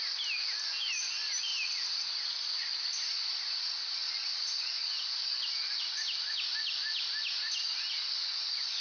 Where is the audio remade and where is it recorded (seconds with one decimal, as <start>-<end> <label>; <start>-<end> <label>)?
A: 0.0-8.8 recorded